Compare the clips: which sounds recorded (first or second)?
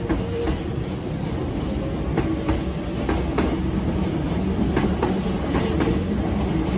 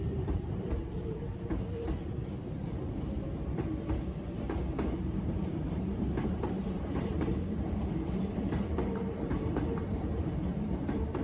first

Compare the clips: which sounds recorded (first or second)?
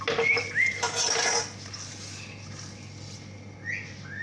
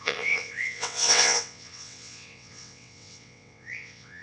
first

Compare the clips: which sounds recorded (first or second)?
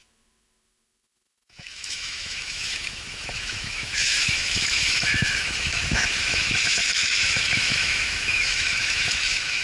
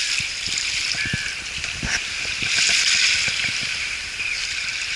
second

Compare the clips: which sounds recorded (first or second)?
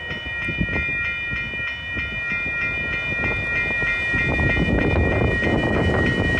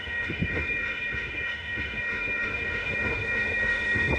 first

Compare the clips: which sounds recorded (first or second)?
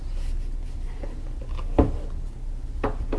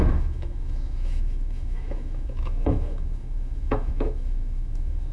first